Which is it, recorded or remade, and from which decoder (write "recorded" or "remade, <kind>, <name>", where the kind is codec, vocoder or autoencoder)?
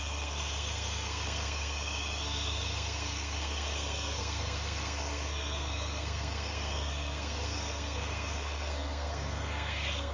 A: remade, codec, SNAC